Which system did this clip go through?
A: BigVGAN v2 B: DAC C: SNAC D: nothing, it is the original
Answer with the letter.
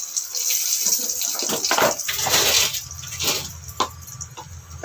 D